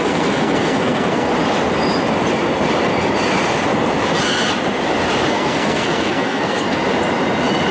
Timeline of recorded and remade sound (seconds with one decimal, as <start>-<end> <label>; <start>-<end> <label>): 0.0-1.3 remade; 1.3-5.3 recorded; 5.3-6.8 remade; 6.8-7.7 recorded